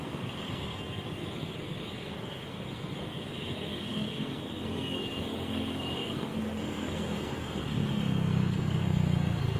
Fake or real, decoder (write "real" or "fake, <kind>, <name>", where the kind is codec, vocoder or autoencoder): fake, codec, SNAC